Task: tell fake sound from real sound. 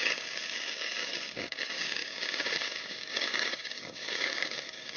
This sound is fake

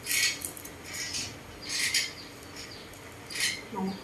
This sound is real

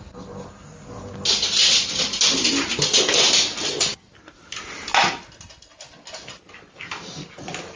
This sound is real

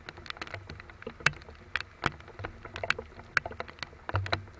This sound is real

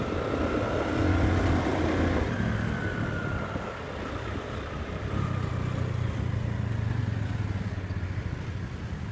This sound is real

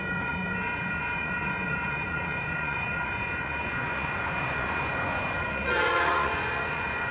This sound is fake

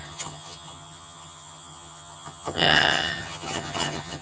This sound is fake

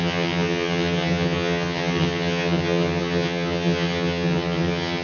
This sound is fake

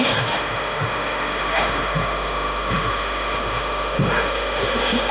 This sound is fake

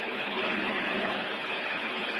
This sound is fake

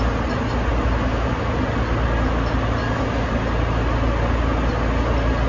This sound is real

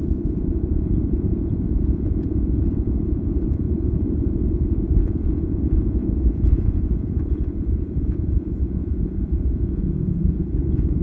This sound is fake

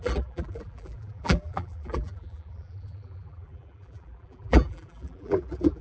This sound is fake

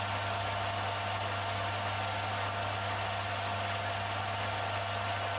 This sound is real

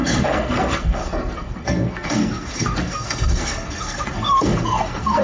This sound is fake